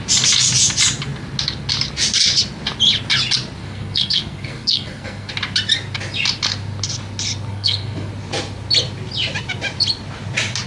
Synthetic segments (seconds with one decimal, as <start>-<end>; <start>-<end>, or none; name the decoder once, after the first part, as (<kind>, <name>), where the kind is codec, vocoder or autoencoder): 3.6-5.3 (codec, SNAC); 7.5-8.1